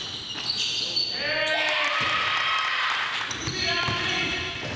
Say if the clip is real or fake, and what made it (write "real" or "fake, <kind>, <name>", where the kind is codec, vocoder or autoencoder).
real